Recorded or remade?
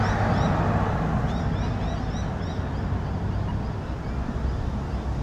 recorded